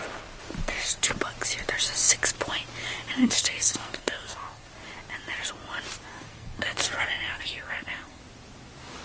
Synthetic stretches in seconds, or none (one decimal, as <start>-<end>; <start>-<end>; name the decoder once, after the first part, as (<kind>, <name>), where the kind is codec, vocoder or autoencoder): 0.6-1.1 (codec, SNAC); 3.2-4.7; 6.1-8.2